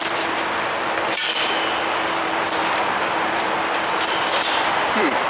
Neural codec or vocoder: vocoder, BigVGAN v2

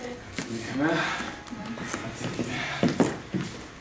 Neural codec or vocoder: none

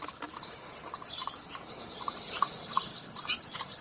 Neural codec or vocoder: vocoder, BigVGAN v2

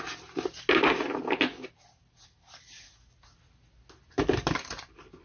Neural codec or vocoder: none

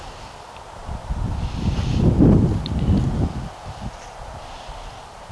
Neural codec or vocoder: none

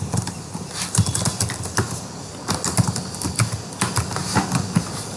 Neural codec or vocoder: none